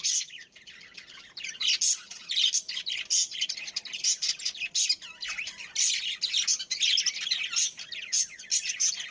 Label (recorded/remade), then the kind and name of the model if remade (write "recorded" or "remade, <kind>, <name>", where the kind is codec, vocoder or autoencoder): recorded